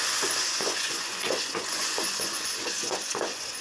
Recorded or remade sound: remade